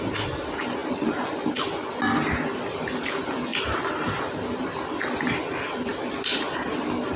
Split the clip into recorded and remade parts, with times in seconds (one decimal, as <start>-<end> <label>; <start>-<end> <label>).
0.0-7.2 recorded